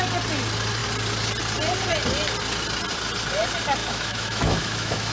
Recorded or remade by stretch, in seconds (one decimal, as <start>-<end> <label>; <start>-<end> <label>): 0.0-3.8 recorded; 3.8-5.1 remade